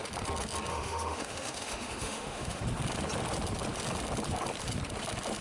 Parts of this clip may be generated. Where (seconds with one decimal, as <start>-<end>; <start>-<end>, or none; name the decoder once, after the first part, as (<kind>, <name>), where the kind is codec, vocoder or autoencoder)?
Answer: 0.7-2.6 (autoencoder, DAC-VAE)